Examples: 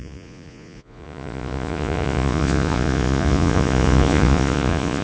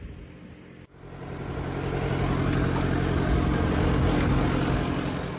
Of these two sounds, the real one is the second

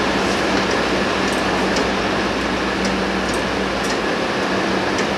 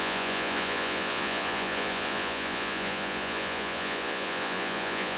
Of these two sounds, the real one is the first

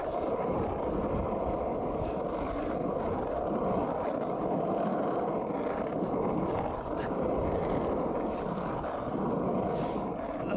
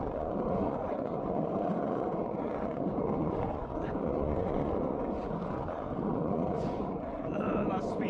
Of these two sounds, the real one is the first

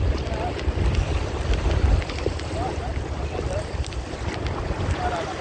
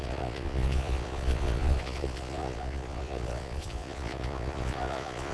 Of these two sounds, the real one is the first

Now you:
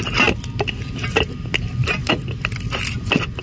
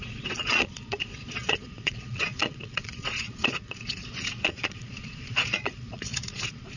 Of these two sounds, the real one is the first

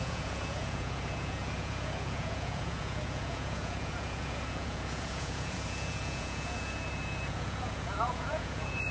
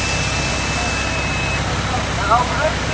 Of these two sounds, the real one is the second